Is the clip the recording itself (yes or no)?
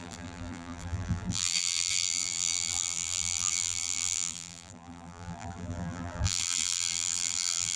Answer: no